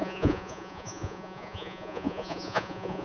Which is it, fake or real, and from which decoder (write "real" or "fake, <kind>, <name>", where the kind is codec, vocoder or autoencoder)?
fake, vocoder, Vocos